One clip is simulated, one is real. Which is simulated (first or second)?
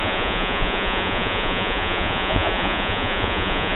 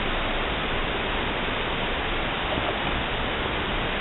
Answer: first